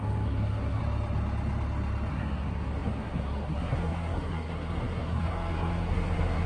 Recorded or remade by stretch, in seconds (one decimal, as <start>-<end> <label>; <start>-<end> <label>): 0.0-0.8 remade; 0.8-2.1 recorded; 2.1-6.5 remade